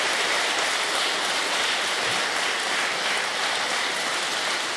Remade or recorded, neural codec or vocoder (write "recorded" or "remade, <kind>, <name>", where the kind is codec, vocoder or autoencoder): recorded